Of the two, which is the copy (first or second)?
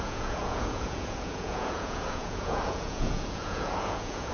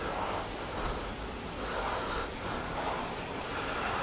first